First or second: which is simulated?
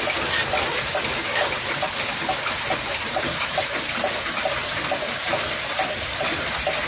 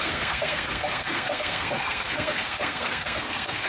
second